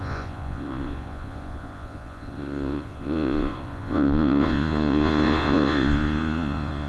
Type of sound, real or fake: fake